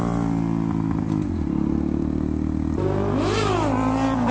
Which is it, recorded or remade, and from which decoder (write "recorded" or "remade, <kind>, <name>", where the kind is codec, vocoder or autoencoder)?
recorded